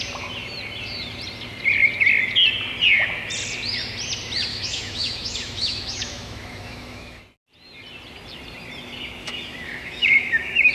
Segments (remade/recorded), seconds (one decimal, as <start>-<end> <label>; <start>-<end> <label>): 0.0-4.5 recorded; 4.5-7.2 remade; 7.2-9.2 recorded; 9.2-10.7 remade